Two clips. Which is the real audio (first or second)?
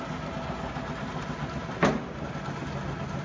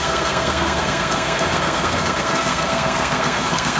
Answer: first